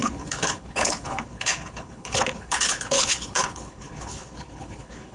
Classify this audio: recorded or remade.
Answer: remade